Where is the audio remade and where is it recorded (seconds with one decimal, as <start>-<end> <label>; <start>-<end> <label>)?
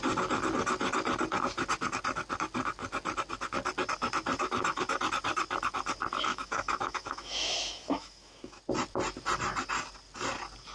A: 0.0-6.3 recorded; 6.3-8.6 remade; 8.6-10.7 recorded